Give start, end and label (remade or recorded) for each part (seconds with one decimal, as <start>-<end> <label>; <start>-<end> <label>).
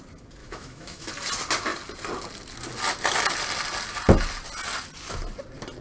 0.0-0.4 recorded; 0.4-1.1 remade; 1.1-5.8 recorded